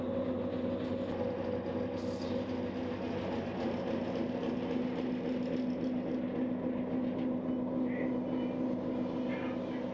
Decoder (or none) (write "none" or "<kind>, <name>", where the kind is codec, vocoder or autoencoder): none